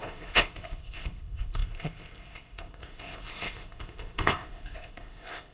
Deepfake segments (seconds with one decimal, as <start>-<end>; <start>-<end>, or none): 0.0-5.5